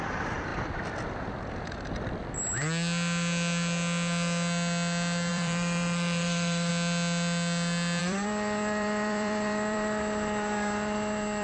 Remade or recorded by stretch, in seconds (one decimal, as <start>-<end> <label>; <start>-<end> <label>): 0.0-2.2 remade; 2.2-5.3 recorded; 5.3-6.7 remade; 6.7-8.0 recorded; 8.0-11.4 remade